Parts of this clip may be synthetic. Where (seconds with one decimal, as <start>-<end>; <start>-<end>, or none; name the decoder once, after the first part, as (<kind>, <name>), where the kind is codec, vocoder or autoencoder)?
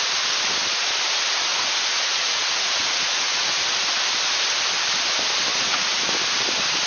1.5-3.6 (vocoder, Vocos); 5.5-6.2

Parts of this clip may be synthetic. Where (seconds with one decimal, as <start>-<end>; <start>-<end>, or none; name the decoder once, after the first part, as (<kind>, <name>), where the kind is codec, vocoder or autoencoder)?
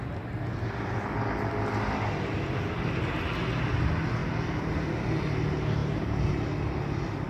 none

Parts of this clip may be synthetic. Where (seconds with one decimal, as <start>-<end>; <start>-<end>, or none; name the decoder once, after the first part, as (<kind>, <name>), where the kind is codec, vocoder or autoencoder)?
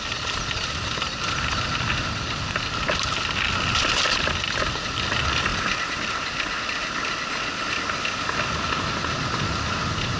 none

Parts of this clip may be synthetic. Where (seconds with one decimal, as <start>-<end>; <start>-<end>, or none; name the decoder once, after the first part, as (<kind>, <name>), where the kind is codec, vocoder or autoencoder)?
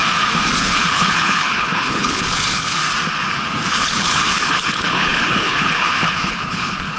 0.6-2.8 (codec, HILCodec); 3.7-7.0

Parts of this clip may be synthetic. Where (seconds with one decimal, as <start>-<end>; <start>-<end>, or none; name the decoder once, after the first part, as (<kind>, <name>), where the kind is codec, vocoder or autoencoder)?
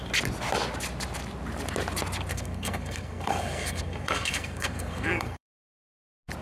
2.3-5.8 (codec, SNAC)